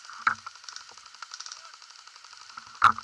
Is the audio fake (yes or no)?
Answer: no